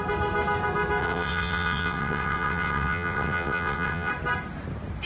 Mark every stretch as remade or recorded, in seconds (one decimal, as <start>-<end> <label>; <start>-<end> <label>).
0.0-1.0 recorded; 1.0-4.1 remade; 4.1-5.1 recorded